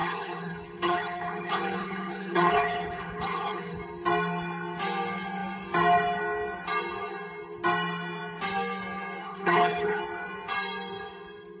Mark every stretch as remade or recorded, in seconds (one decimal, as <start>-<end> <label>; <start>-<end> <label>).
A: 0.0-3.8 remade; 3.8-9.2 recorded; 9.2-10.0 remade; 10.0-11.6 recorded